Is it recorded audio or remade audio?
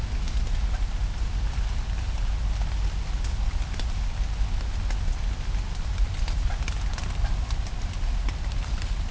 recorded